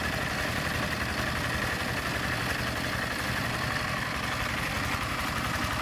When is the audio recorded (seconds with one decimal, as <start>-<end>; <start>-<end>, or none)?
0.0-5.8